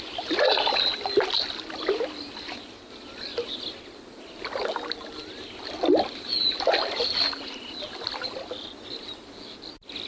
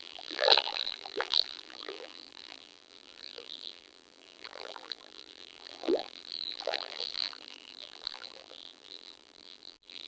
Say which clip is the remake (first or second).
second